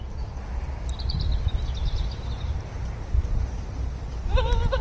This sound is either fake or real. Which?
real